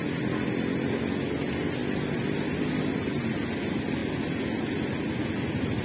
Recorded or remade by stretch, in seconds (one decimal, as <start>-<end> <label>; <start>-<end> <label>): 0.0-5.8 recorded